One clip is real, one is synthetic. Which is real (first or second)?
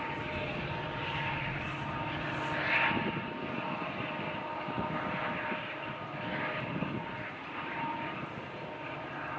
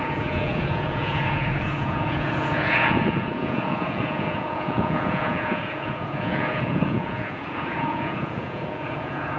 first